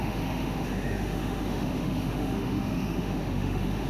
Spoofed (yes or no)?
yes